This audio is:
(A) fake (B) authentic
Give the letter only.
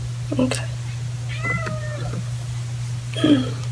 B